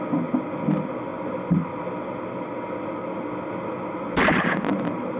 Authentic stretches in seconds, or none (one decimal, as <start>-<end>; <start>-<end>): 0.0-5.2